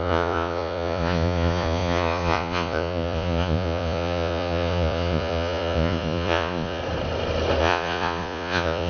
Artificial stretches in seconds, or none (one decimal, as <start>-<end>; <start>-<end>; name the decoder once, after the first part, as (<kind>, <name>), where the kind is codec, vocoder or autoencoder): 0.0-6.8 (vocoder, Vocos); 7.6-8.9

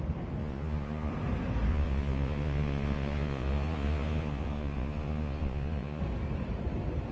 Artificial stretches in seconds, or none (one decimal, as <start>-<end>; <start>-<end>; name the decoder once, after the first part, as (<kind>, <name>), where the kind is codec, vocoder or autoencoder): 0.4-1.1 (vocoder, Vocos); 1.7-6.0